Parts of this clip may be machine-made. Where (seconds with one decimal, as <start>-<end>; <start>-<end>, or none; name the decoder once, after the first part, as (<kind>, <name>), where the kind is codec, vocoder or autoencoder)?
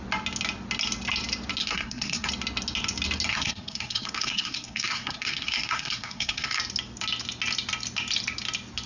1.6-2.3 (codec, SNAC); 3.3-6.6